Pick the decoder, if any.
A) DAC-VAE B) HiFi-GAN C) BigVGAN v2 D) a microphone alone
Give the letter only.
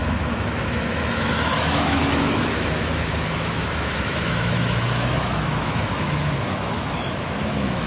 A